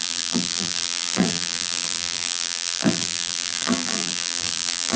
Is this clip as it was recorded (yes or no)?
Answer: no